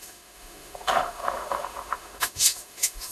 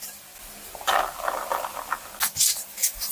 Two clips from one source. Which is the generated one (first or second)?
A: first